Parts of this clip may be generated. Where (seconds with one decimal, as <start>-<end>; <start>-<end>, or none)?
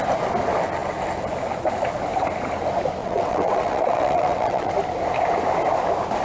3.0-4.7